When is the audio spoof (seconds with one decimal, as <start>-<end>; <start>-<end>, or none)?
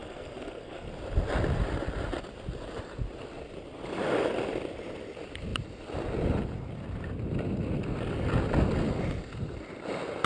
0.0-0.9